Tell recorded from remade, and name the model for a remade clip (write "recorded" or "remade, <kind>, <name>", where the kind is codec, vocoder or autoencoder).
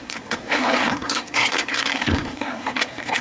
remade, codec, SNAC